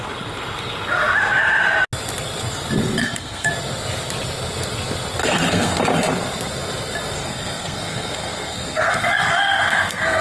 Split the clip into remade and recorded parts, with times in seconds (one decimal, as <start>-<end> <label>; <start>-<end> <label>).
0.0-3.0 recorded; 3.0-3.5 remade; 3.5-5.2 recorded; 5.2-5.8 remade; 5.8-7.2 recorded; 7.2-10.2 remade